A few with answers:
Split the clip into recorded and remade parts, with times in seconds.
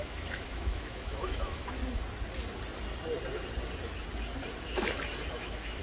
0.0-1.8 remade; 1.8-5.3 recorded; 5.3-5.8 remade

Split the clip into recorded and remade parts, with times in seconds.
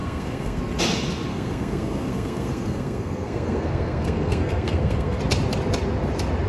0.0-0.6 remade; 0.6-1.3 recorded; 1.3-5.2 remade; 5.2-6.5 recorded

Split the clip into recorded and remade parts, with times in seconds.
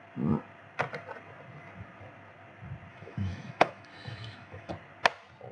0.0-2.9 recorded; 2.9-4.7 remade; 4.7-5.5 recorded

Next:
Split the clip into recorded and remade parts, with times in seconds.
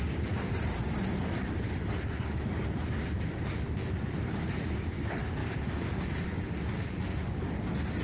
0.0-5.4 recorded; 5.4-6.1 remade; 6.1-8.0 recorded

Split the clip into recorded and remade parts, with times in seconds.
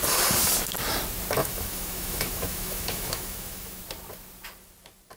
0.0-1.4 recorded; 1.4-3.8 remade; 3.8-5.2 recorded